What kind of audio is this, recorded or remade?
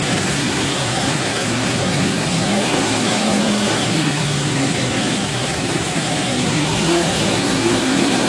remade